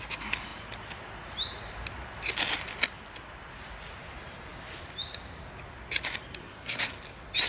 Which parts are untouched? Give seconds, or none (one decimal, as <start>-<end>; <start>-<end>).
0.0-6.4; 6.9-7.5